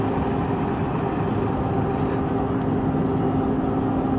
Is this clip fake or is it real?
real